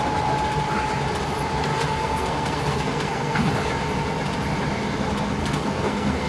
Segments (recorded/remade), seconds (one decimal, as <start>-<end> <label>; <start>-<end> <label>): 0.0-1.7 recorded; 1.7-3.5 remade; 3.5-5.4 recorded; 5.4-6.3 remade